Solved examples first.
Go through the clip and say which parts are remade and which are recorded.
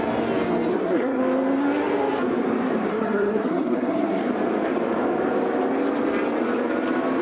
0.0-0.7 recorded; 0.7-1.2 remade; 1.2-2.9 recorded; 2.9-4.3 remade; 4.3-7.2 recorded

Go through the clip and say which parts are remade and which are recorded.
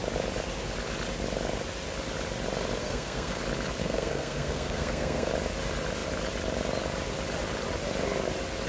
0.0-2.8 recorded; 2.8-3.4 remade; 3.4-3.8 recorded; 3.8-5.3 remade; 5.3-8.7 recorded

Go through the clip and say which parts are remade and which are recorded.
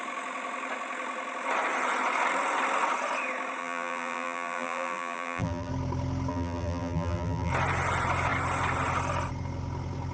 0.0-3.6 recorded; 3.6-5.7 remade; 5.7-6.3 recorded; 6.3-7.5 remade; 7.5-10.1 recorded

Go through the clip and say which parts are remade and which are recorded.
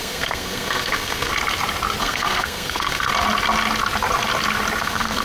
0.0-1.3 remade; 1.3-2.0 recorded; 2.0-3.1 remade; 3.1-4.8 recorded; 4.8-5.2 remade